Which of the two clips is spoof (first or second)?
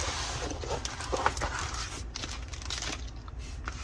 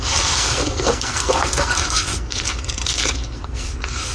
second